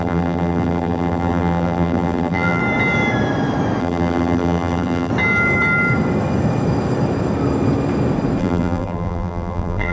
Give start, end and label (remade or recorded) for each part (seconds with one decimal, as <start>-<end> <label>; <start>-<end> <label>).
0.0-2.6 remade; 2.6-3.8 recorded; 3.8-5.1 remade; 5.1-8.4 recorded; 8.4-9.9 remade